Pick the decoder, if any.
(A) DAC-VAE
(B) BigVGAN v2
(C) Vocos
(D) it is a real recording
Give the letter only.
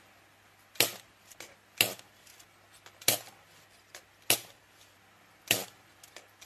D